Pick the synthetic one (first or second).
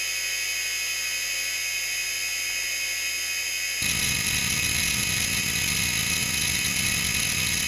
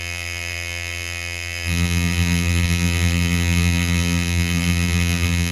second